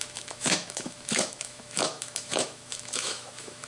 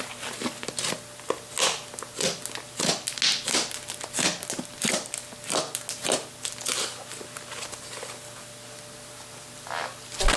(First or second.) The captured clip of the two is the second